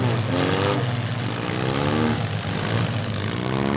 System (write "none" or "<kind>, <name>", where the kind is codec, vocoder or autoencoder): none